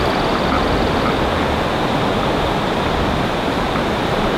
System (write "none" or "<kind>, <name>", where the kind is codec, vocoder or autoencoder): none